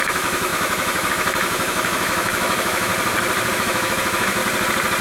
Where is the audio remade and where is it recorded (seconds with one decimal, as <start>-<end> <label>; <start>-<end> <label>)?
0.0-2.9 remade; 2.9-3.5 recorded; 3.5-4.4 remade; 4.4-5.0 recorded